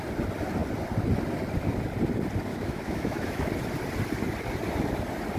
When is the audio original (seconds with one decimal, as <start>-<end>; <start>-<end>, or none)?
0.0-2.5; 3.5-5.4

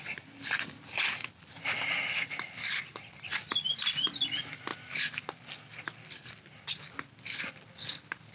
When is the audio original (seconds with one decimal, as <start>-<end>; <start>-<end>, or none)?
0.0-8.3

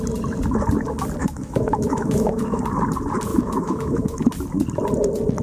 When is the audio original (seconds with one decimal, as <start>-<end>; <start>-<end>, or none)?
0.0-1.2; 2.6-3.3; 4.3-5.4

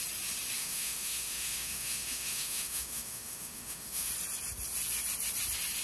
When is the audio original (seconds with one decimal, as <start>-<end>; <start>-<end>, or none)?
0.0-0.6; 4.1-5.8

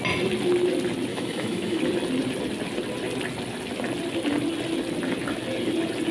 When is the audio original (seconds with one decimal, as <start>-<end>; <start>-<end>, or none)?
0.0-1.1; 1.8-6.1

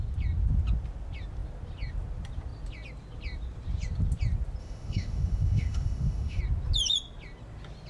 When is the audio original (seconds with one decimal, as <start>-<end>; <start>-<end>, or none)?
0.0-4.6; 6.4-7.9